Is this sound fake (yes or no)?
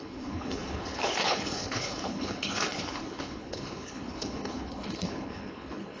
yes